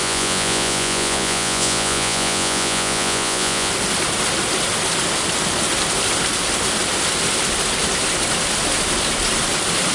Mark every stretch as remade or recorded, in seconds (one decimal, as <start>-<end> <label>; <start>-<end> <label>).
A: 0.0-3.7 remade; 3.7-9.9 recorded